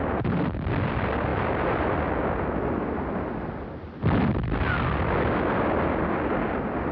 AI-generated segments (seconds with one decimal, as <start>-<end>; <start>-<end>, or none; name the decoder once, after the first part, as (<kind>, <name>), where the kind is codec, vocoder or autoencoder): none